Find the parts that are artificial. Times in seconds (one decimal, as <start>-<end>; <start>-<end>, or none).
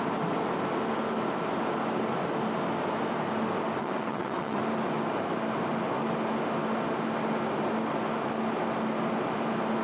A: 3.8-4.6